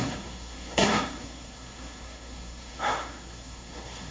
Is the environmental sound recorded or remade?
remade